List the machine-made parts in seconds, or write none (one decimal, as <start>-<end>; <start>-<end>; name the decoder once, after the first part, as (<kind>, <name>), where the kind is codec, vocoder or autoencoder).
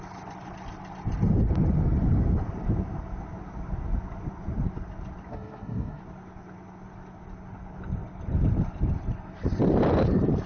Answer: 5.3-6.0 (codec, SNAC)